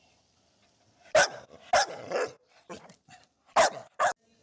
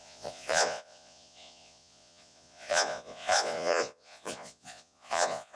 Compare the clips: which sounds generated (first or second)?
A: second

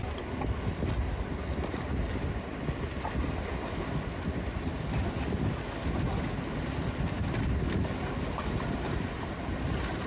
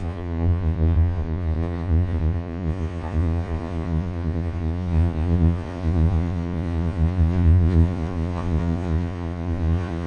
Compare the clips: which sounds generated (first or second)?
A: second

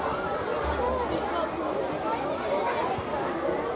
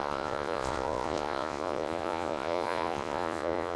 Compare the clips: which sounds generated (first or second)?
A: second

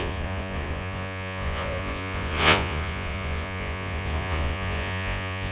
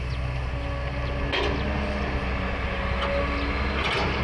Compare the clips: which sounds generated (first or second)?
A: first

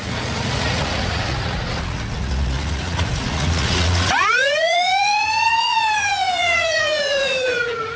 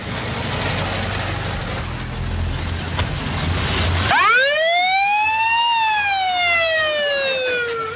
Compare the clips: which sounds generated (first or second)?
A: first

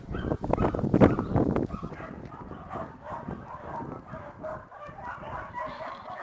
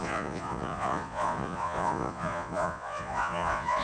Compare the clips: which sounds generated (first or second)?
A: second